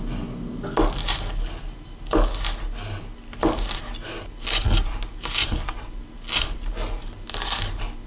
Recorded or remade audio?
recorded